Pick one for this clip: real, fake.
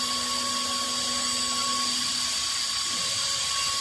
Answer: real